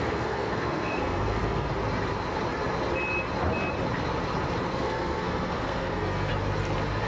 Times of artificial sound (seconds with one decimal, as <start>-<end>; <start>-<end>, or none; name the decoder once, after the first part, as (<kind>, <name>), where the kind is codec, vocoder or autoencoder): 0.0-1.7 (codec, SNAC); 4.7-6.3